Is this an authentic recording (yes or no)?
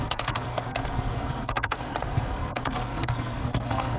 no